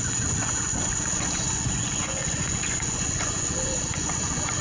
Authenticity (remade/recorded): remade